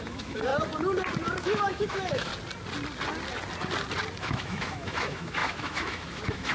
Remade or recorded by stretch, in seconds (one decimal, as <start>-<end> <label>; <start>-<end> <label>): 0.0-0.5 remade; 0.5-1.4 recorded; 1.4-2.3 remade; 2.3-4.2 recorded; 4.2-6.5 remade